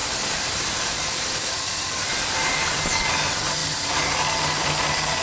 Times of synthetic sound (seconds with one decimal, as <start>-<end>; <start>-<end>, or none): 0.0-3.1; 3.6-4.8